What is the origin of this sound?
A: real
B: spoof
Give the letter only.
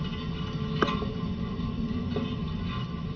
A